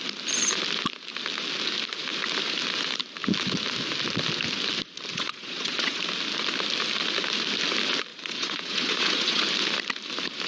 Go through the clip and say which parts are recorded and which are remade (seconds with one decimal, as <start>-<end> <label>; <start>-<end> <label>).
0.0-5.1 recorded; 5.1-6.0 remade; 6.0-8.1 recorded; 8.1-9.4 remade; 9.4-10.5 recorded

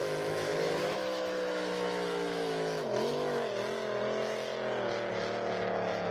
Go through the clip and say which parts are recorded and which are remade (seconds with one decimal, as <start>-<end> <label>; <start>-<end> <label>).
0.0-3.5 remade; 3.5-6.1 recorded

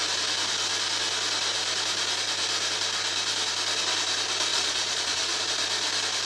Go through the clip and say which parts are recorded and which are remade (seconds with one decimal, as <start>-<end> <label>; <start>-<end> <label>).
0.0-4.5 recorded; 4.5-5.4 remade; 5.4-6.3 recorded

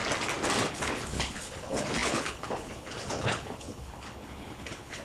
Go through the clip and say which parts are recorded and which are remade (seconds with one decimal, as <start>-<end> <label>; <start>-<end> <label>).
0.0-0.7 recorded; 0.7-5.0 remade

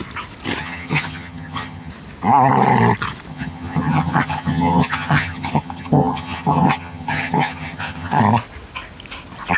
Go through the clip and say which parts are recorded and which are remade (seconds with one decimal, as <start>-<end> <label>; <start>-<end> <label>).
0.0-0.6 recorded; 0.6-1.9 remade; 1.9-3.3 recorded; 3.3-8.2 remade; 8.2-9.6 recorded

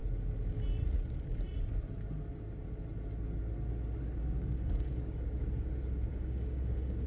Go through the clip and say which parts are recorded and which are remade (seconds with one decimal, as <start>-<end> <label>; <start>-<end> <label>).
0.0-4.2 recorded; 4.2-5.4 remade; 5.4-6.1 recorded; 6.1-7.1 remade

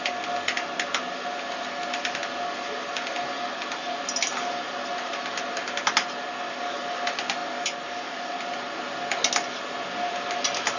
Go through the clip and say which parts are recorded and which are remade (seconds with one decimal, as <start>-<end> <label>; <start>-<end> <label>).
0.0-10.8 recorded

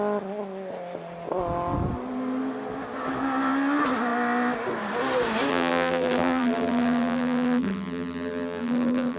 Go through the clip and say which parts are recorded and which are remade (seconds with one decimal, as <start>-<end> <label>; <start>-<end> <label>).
0.0-5.5 recorded; 5.5-9.2 remade